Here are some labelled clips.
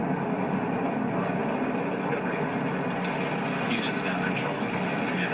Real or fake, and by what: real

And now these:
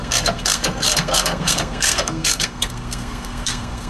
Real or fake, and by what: fake, codec, SNAC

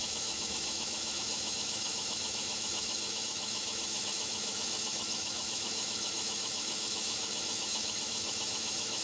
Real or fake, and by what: fake, autoencoder, DAC-VAE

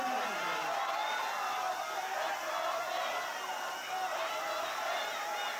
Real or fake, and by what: real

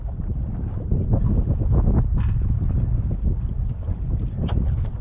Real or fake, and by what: real